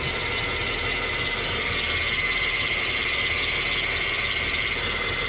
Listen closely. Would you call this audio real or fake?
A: real